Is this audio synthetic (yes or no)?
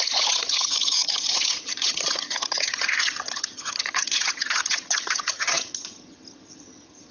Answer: yes